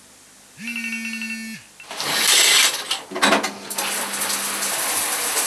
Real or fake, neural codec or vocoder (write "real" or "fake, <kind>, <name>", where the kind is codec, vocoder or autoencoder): real